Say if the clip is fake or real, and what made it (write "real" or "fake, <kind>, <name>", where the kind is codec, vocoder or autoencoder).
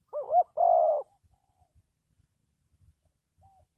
real